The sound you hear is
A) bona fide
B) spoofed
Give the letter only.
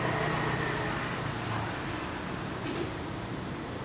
A